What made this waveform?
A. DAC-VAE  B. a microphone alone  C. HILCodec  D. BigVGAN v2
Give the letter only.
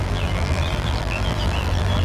D